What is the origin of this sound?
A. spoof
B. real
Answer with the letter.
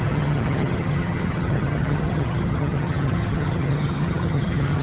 A